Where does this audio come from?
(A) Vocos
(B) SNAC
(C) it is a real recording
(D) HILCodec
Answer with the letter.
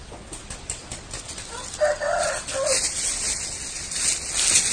C